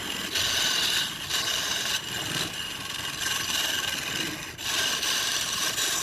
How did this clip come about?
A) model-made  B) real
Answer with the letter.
B